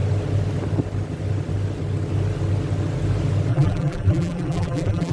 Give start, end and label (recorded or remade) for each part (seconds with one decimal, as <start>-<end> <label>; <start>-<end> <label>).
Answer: 0.0-3.5 recorded; 3.5-5.1 remade

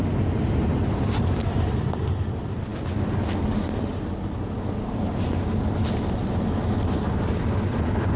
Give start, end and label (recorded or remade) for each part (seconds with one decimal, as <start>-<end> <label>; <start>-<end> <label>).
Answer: 0.0-8.2 recorded

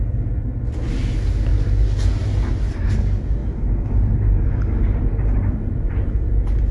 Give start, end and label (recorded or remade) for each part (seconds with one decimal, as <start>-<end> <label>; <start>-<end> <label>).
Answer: 0.0-3.4 recorded; 3.4-6.7 remade